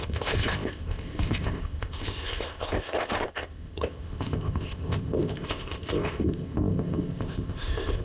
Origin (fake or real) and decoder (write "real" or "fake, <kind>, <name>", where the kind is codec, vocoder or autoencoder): fake, codec, ZipCodec